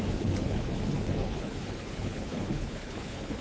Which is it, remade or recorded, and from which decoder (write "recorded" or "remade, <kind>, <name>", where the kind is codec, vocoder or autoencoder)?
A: remade, codec, HILCodec